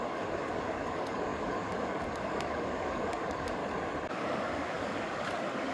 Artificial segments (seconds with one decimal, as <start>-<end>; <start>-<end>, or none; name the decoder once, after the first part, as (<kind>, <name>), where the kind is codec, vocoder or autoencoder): 0.0-3.6 (codec, DAC); 4.1-5.7